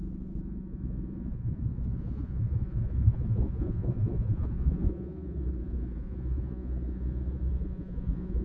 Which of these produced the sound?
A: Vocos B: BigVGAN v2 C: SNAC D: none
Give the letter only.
A